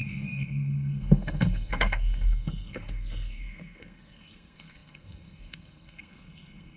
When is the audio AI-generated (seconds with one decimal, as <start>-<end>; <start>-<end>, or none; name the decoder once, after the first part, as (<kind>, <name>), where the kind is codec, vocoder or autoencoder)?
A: 0.0-6.8 (codec, SNAC)